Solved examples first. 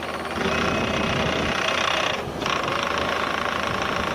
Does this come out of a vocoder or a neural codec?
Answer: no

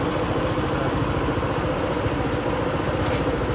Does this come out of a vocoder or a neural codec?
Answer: no